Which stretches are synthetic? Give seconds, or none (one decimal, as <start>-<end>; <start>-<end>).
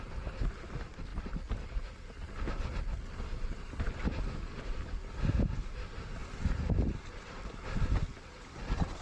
1.1-4.9; 6.2-8.2